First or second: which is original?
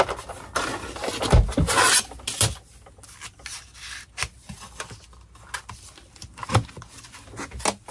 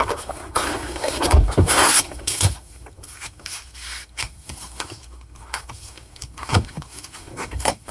first